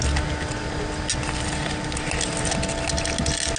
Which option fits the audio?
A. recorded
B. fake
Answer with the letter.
A